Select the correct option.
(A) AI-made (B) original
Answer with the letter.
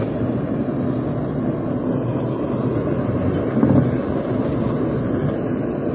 B